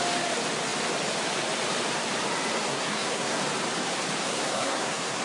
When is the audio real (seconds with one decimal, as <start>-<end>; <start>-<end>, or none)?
0.0-2.7; 3.4-4.2